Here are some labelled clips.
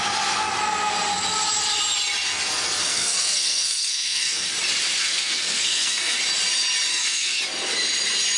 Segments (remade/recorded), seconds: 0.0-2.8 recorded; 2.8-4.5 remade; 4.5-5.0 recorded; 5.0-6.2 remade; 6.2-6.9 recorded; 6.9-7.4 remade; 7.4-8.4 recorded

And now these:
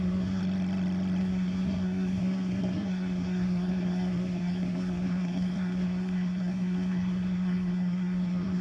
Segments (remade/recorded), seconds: 0.0-0.4 remade; 0.4-1.2 recorded; 1.2-8.6 remade

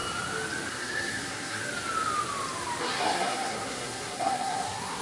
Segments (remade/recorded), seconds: 0.0-0.7 recorded; 0.7-1.6 remade; 1.6-2.8 recorded; 2.8-5.0 remade

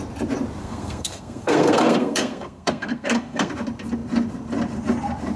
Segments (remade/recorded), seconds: 0.0-0.6 recorded; 0.6-3.5 remade; 3.5-5.4 recorded

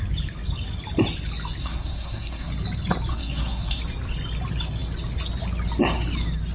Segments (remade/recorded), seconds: 0.0-1.6 recorded; 1.6-2.5 remade; 2.5-3.1 recorded; 3.1-3.8 remade; 3.8-6.5 recorded